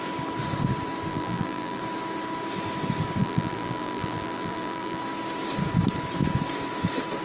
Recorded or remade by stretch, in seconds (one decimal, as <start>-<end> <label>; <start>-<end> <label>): 0.0-1.1 recorded; 1.1-1.8 remade; 1.8-3.2 recorded; 3.2-5.0 remade; 5.0-7.2 recorded